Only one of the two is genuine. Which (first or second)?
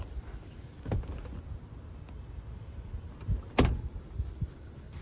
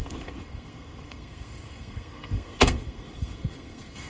first